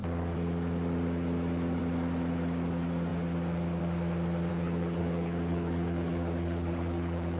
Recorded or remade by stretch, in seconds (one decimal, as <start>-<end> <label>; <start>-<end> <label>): 0.0-4.5 recorded; 4.5-7.4 remade